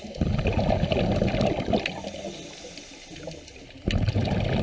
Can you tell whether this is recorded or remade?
recorded